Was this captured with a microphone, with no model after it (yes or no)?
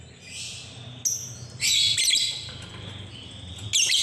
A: yes